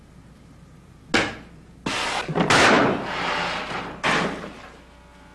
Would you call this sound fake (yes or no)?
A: no